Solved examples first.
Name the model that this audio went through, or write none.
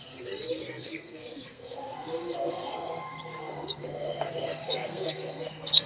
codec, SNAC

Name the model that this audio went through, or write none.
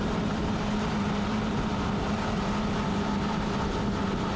vocoder, BigVGAN v2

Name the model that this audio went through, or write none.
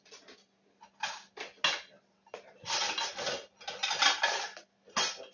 none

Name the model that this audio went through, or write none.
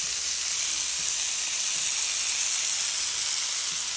none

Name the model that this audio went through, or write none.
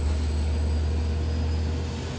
none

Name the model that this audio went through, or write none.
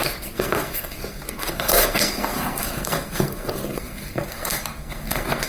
codec, SNAC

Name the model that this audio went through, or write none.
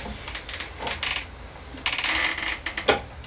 none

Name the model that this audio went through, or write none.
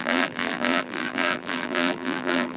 vocoder, BigVGAN v2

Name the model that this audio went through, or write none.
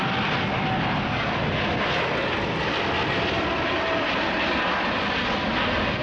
none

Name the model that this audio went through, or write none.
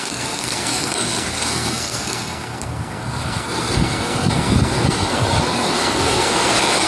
codec, SNAC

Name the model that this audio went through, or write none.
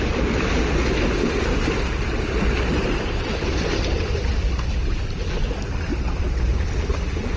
none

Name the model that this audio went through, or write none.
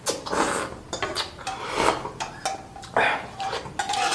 none